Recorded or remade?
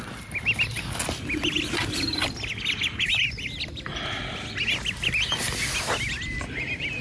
recorded